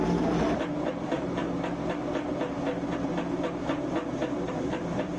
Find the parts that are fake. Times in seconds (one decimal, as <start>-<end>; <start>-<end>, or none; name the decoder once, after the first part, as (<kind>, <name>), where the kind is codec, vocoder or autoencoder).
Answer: 0.0-1.4 (vocoder, BigVGAN v2); 4.5-5.2